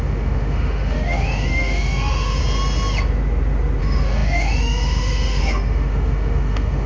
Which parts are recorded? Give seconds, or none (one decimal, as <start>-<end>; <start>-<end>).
2.4-3.8